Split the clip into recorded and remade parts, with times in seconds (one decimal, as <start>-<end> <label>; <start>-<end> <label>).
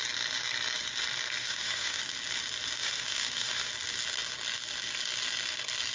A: 0.0-1.4 recorded; 1.4-2.0 remade; 2.0-2.8 recorded; 2.8-3.7 remade; 3.7-5.9 recorded